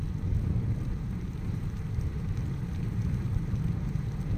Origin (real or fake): fake